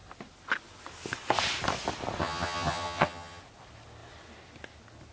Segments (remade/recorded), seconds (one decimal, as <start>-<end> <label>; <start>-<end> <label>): 0.0-2.2 recorded; 2.2-3.4 remade; 3.4-5.1 recorded